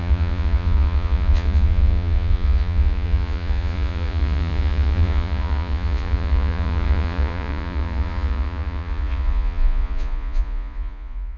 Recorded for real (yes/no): no